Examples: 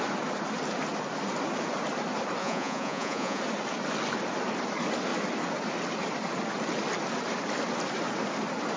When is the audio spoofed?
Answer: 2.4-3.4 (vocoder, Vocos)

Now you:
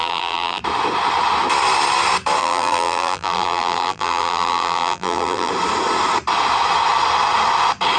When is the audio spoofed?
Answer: 0.0-0.6 (vocoder, BigVGAN v2); 2.4-5.5

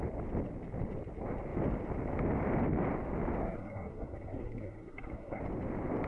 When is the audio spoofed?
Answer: 3.4-5.4 (codec, SNAC)

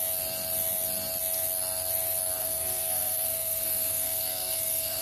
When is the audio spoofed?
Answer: 2.4-5.0 (codec, SNAC)